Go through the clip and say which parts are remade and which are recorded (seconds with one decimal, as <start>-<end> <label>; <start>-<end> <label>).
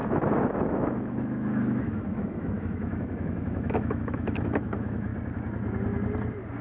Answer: 0.0-5.1 remade; 5.1-6.6 recorded